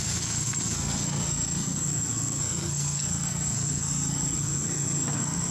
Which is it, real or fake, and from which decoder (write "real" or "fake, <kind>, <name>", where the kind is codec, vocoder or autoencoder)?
fake, codec, SNAC